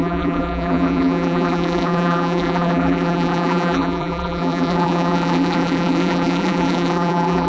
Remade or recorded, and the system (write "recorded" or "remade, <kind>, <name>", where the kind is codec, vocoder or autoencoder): remade, vocoder, BigVGAN v2